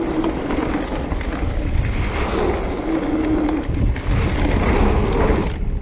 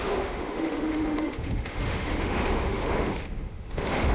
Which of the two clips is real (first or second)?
first